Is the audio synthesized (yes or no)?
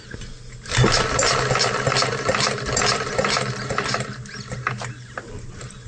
no